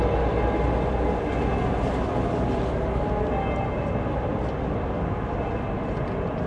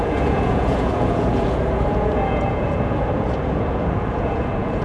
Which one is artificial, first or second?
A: second